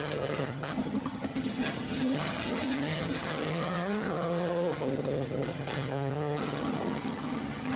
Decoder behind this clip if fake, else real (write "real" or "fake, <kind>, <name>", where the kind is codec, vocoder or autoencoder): fake, vocoder, HiFi-GAN